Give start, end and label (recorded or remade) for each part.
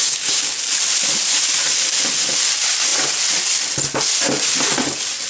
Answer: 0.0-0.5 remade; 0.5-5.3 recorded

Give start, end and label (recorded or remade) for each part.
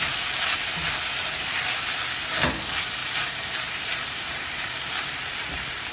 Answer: 0.0-3.0 recorded; 3.0-5.9 remade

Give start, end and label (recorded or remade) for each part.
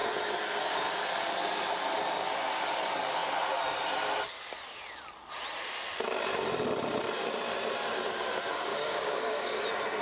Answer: 0.0-8.7 recorded; 8.7-9.6 remade; 9.6-10.0 recorded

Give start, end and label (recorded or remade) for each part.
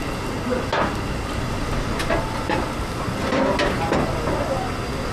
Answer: 0.0-5.1 recorded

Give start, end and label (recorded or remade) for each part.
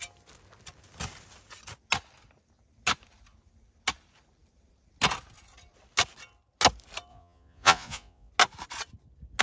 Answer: 0.0-7.1 recorded; 7.1-8.3 remade; 8.3-9.4 recorded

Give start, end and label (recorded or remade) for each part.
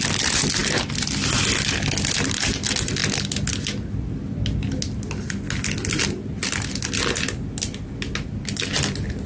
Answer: 0.0-9.3 recorded